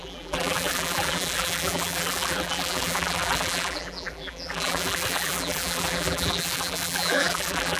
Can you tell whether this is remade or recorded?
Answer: remade